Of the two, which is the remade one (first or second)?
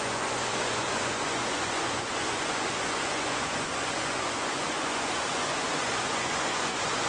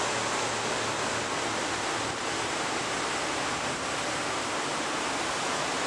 first